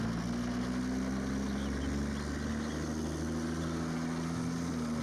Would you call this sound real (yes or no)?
yes